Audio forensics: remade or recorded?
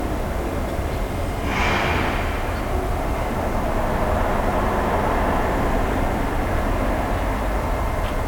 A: recorded